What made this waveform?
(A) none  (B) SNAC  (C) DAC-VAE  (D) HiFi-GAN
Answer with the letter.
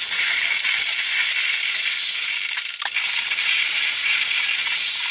A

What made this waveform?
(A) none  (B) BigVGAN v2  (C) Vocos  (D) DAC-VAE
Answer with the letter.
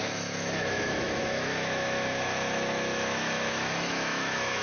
D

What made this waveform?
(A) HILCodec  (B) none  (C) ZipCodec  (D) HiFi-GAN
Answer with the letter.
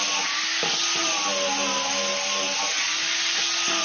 B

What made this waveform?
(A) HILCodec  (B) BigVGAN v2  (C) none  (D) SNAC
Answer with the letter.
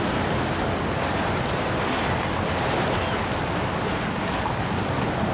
C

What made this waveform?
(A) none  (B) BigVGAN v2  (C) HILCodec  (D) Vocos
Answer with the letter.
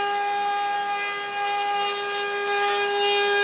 A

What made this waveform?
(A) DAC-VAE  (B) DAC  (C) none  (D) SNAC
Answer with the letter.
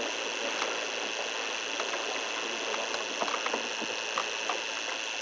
C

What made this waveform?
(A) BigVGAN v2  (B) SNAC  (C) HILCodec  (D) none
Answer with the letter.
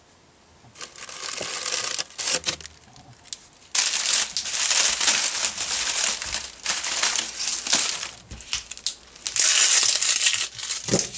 D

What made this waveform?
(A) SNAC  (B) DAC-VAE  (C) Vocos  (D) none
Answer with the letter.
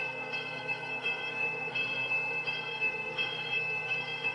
A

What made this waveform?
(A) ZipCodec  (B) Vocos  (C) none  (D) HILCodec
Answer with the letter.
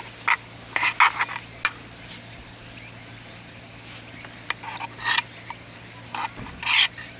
C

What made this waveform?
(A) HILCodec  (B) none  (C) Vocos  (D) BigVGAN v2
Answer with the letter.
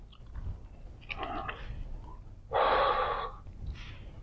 B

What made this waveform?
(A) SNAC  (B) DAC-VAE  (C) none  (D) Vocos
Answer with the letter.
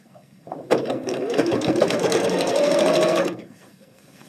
A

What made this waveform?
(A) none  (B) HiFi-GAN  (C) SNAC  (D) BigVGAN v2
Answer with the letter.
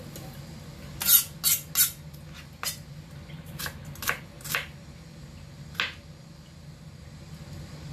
A